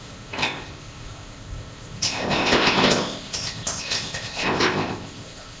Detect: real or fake fake